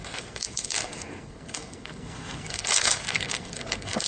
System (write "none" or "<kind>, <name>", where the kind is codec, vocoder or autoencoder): codec, SNAC